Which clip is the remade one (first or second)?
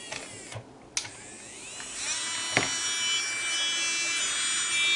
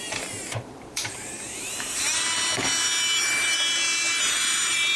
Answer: second